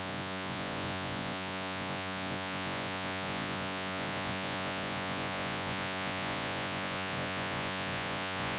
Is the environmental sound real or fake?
fake